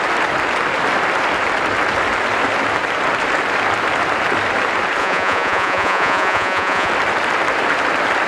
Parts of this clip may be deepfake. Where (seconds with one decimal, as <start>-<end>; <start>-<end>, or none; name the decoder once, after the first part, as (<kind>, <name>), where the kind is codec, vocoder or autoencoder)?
5.0-6.9 (vocoder, Vocos)